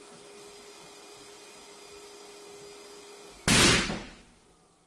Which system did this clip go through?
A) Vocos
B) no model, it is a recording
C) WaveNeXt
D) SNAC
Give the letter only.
B